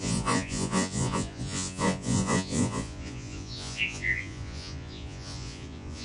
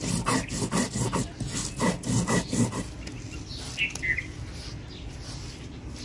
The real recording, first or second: second